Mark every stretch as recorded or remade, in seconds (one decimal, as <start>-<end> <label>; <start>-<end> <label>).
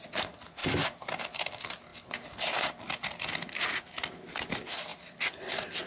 0.0-5.9 recorded